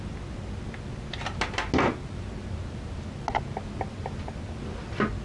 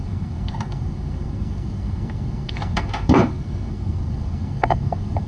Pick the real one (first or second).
first